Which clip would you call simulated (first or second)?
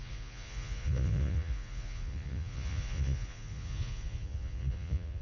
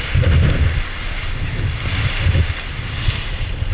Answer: first